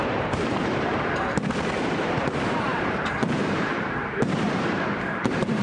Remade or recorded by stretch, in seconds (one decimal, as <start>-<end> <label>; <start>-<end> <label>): 0.0-5.6 remade